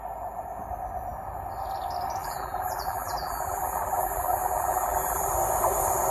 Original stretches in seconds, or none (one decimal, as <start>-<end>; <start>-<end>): 0.0-2.2; 5.3-6.1